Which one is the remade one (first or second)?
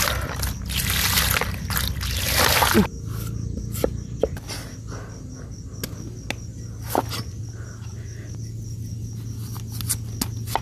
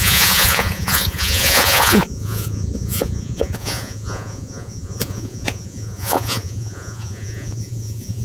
second